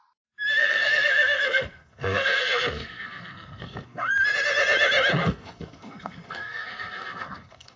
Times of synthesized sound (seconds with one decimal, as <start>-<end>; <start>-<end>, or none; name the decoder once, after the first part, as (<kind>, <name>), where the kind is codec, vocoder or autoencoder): 0.6-4.1 (codec, SNAC); 5.2-7.8